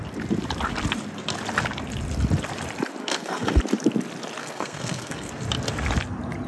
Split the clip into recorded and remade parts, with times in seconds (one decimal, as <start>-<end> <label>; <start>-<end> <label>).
0.0-3.0 recorded; 3.0-3.6 remade; 3.6-4.4 recorded; 4.4-5.3 remade; 5.3-6.5 recorded